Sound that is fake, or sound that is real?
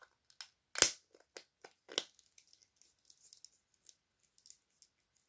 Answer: real